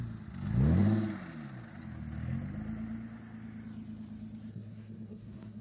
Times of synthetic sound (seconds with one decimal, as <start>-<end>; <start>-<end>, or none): 4.5-5.6